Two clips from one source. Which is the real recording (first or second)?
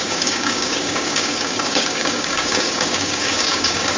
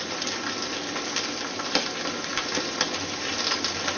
second